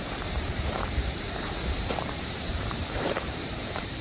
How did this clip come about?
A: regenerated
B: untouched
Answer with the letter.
A